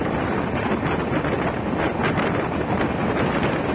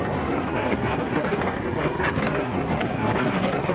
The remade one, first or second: second